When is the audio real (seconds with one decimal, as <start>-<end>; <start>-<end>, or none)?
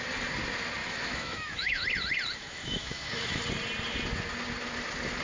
0.0-0.8; 1.8-2.4; 3.4-5.2